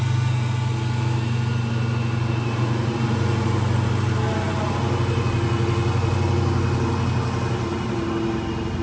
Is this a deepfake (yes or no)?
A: no